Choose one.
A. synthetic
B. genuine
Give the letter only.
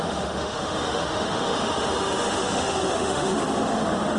A